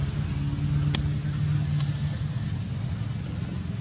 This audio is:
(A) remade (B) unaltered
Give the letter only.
B